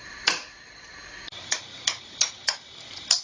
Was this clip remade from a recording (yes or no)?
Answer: no